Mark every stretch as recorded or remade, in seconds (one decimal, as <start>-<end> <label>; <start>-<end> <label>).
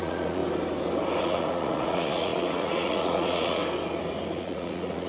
0.0-0.4 remade; 0.4-1.2 recorded; 1.2-3.6 remade; 3.6-4.3 recorded; 4.3-5.1 remade